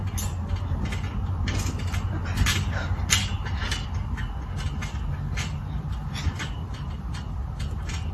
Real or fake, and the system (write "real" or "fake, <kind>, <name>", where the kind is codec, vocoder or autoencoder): real